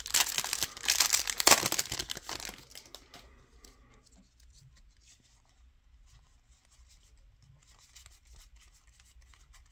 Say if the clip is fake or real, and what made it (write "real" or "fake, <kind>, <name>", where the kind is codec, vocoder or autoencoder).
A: real